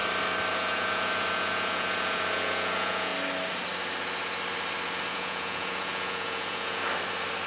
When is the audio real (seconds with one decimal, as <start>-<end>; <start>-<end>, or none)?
0.0-0.5; 3.1-5.1; 6.8-7.5